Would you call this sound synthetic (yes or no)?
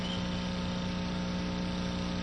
no